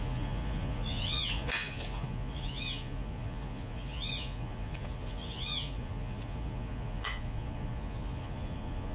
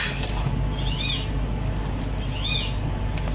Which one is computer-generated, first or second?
first